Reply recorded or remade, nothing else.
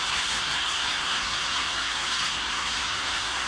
remade